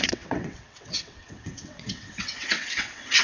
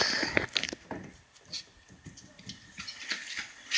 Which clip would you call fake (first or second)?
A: first